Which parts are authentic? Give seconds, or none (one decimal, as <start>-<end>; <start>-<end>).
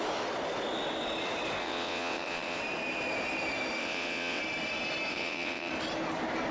0.0-1.6; 2.6-3.8; 4.4-5.1; 5.7-6.5